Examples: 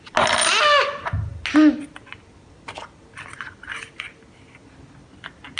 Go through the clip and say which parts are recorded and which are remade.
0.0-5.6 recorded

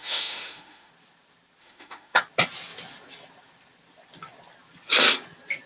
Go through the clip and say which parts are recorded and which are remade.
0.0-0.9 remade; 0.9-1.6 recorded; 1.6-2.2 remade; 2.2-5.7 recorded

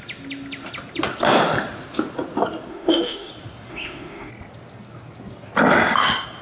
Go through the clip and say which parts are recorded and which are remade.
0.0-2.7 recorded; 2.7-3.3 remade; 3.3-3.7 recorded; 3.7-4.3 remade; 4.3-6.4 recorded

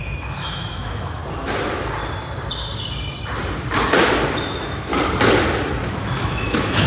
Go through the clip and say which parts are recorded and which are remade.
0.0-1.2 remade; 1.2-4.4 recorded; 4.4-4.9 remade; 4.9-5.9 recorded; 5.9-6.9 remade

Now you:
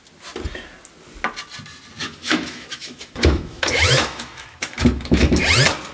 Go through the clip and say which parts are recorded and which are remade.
0.0-2.0 recorded; 2.0-5.4 remade; 5.4-5.9 recorded